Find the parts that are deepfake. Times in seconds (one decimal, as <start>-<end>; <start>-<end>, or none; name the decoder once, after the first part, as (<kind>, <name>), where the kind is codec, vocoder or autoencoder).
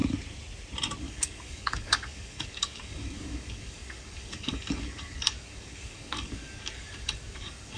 1.0-7.8 (codec, DAC)